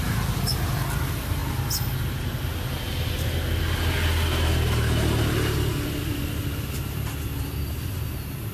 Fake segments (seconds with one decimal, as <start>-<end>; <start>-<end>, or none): none